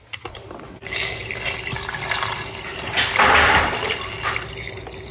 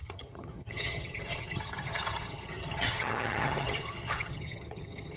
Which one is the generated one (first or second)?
second